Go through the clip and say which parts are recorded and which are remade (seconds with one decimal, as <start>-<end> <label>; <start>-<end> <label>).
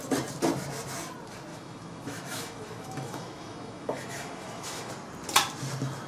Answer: 0.0-1.5 recorded; 1.5-4.9 remade; 4.9-6.1 recorded